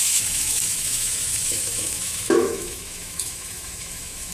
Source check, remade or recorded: remade